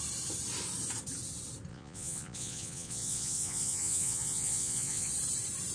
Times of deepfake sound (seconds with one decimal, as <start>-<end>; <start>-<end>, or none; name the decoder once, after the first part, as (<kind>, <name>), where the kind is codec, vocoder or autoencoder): 1.7-5.1 (vocoder, Vocos)